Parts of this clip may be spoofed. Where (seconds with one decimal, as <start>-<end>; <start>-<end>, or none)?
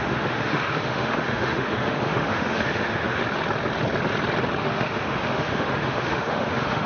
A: 0.0-3.2; 4.6-6.9